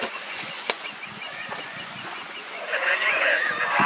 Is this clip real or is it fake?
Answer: fake